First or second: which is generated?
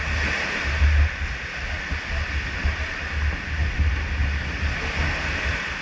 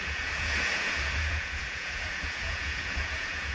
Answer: second